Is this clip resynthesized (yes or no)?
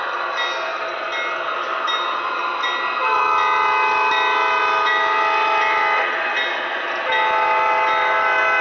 no